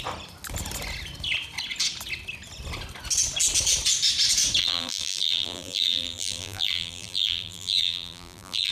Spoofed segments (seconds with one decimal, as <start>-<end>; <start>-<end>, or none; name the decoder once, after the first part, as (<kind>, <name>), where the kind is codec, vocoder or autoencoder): 4.6-8.7 (vocoder, BigVGAN v2)

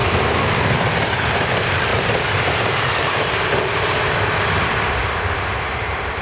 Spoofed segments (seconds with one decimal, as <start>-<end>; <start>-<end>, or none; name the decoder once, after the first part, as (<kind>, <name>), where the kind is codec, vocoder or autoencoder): 5.0-6.2 (vocoder, BigVGAN v2)

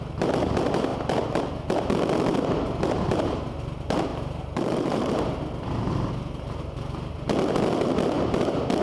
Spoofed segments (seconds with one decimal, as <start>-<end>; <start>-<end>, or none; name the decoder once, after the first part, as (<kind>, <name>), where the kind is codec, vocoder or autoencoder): 4.1-5.1 (vocoder, BigVGAN v2)

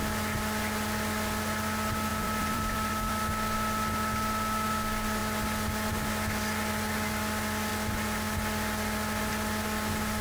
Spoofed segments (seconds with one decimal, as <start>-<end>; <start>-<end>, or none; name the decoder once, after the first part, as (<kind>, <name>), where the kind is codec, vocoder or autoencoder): 2.1-3.2 (vocoder, BigVGAN v2)

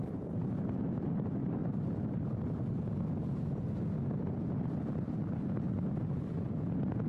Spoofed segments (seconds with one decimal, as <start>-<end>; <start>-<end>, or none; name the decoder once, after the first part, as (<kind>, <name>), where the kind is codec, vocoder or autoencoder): none

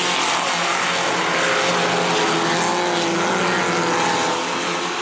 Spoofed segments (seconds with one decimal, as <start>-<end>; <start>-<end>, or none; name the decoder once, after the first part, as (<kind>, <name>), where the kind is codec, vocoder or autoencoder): none